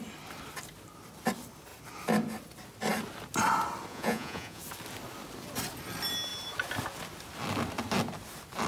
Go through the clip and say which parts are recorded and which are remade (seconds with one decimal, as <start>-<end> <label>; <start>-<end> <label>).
0.0-3.9 recorded; 3.9-4.6 remade; 4.6-8.7 recorded